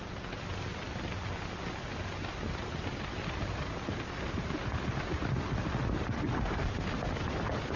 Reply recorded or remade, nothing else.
recorded